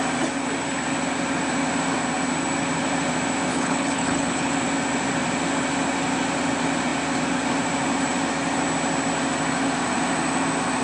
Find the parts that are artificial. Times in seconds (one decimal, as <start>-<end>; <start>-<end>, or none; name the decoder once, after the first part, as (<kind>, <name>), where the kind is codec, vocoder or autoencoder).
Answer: 3.5-4.5 (codec, HILCodec)